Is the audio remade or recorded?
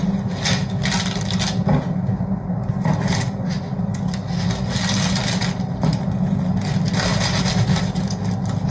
recorded